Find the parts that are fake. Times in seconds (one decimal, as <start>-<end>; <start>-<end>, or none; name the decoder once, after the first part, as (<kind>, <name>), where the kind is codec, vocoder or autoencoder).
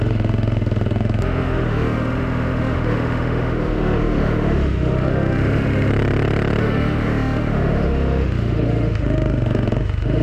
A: 0.0-5.9 (autoencoder, DAC-VAE); 6.6-10.2